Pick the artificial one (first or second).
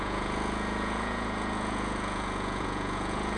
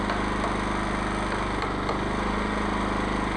first